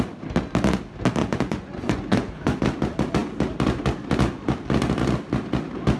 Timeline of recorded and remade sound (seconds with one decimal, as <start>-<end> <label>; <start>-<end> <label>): 0.0-1.2 recorded; 1.2-2.6 remade; 2.6-6.0 recorded